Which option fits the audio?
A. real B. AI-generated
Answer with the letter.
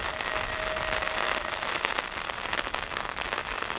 A